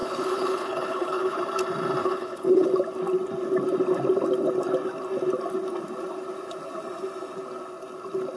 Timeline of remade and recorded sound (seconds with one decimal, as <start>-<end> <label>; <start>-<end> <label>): 0.0-1.4 remade; 1.4-2.0 recorded; 2.0-2.7 remade; 2.7-8.4 recorded